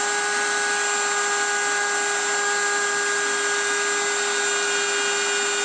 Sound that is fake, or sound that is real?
real